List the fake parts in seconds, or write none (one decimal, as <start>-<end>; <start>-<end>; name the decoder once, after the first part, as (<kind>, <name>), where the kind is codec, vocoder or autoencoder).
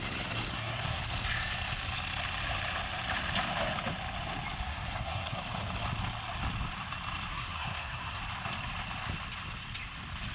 0.5-1.0 (codec, SNAC); 4.7-5.4; 7.3-8.2